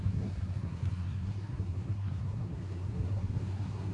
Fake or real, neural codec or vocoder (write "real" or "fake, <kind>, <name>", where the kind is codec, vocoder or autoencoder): fake, codec, SNAC